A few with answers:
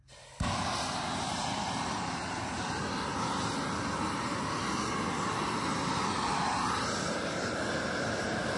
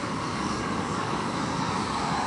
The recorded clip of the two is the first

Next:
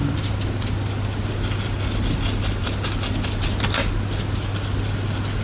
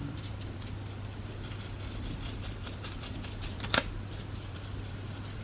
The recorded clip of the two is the first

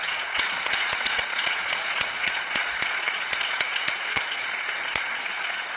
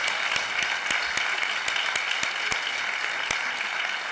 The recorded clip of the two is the second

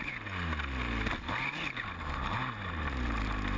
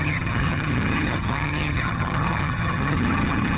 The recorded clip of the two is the first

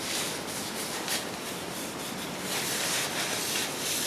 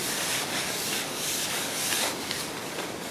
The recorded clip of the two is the first